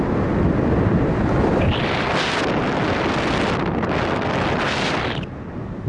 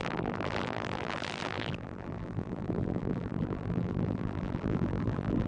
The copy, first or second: second